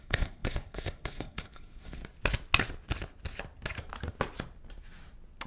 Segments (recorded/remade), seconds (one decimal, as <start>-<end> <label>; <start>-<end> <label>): 0.0-2.0 remade; 2.0-5.5 recorded